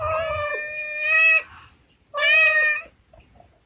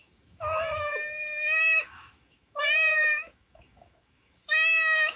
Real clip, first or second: first